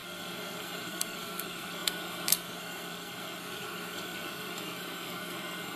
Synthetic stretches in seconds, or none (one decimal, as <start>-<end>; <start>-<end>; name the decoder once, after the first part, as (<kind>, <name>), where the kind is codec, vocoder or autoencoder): 0.0-5.8 (codec, SNAC)